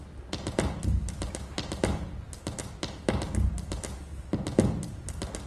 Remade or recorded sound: recorded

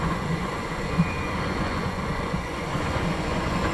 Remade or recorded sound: remade